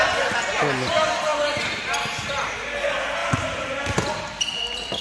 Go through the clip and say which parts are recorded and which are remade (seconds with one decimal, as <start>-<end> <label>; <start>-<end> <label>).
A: 0.0-3.2 recorded; 3.2-3.8 remade; 3.8-5.0 recorded